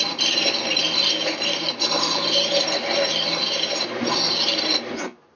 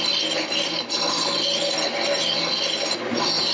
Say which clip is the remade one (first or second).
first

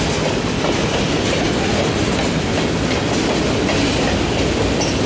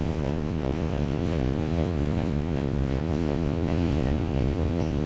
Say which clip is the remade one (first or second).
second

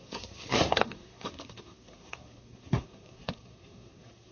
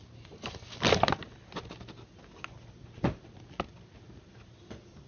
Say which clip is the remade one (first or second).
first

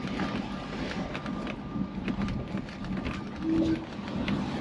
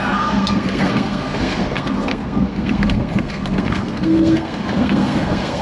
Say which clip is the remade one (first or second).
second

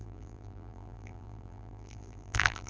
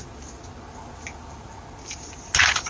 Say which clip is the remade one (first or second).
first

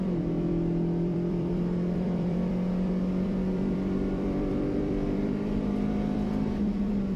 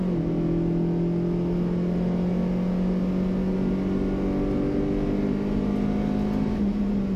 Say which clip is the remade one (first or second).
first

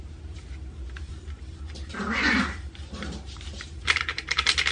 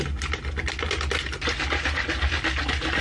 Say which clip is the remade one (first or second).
first